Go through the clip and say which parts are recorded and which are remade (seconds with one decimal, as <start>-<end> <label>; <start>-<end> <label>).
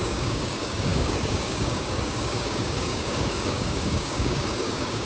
0.0-5.1 remade